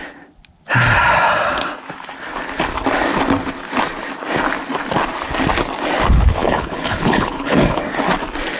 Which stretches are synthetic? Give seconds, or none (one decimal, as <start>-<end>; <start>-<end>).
6.4-7.8